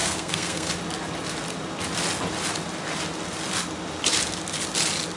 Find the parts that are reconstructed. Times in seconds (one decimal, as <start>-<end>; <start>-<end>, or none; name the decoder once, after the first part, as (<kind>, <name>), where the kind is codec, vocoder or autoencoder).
0.0-0.7 (codec, SNAC)